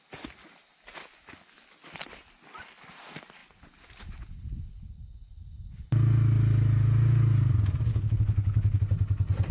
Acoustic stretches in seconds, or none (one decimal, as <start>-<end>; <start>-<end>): 0.0-7.9; 8.8-9.5